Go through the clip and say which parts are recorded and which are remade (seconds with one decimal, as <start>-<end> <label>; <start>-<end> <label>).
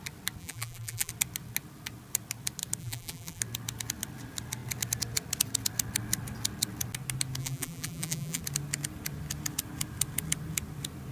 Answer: 0.0-0.4 recorded; 0.4-1.1 remade; 1.1-2.8 recorded; 2.8-3.4 remade; 3.4-7.4 recorded; 7.4-8.4 remade; 8.4-11.1 recorded